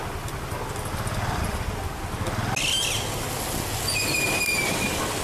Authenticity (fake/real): real